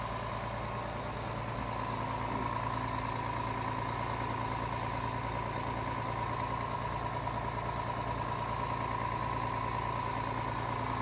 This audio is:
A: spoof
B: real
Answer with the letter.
B